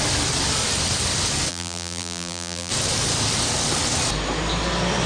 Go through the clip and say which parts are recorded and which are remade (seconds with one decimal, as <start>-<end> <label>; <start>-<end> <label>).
0.0-1.5 recorded; 1.5-2.7 remade; 2.7-5.1 recorded